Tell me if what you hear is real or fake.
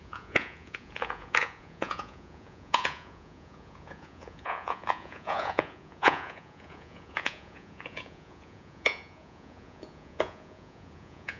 fake